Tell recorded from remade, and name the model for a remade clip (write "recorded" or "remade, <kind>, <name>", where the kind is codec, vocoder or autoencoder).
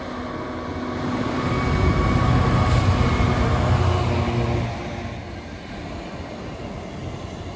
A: recorded